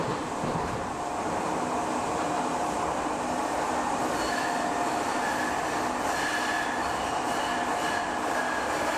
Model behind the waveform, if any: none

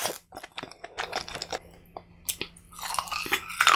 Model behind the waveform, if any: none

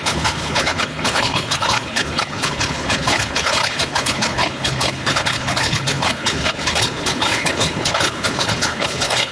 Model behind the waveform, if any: codec, HILCodec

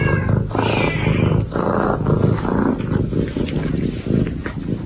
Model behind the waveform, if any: none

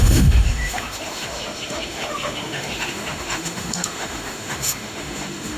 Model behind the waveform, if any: autoencoder, DAC-VAE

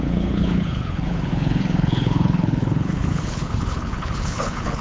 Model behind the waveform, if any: codec, HILCodec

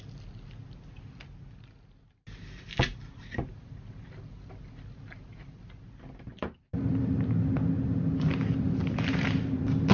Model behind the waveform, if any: none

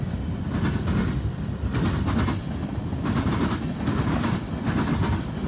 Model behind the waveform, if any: none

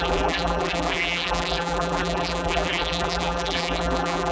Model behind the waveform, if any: vocoder, BigVGAN v2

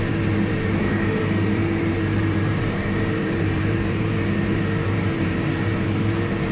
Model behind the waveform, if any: vocoder, BigVGAN v2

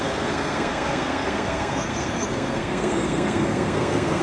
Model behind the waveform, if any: codec, SNAC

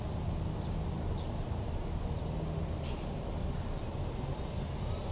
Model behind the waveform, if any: none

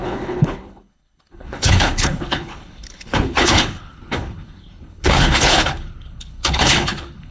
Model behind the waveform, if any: codec, HILCodec